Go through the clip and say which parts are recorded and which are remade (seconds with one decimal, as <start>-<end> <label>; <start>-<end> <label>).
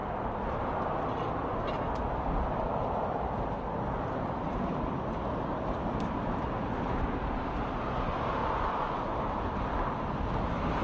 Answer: 0.0-8.4 recorded; 8.4-9.0 remade; 9.0-10.8 recorded